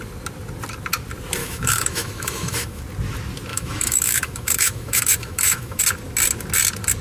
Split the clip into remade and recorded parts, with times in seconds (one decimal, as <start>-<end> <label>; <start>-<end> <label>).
0.0-1.4 recorded; 1.4-2.8 remade; 2.8-3.5 recorded; 3.5-5.8 remade; 5.8-7.0 recorded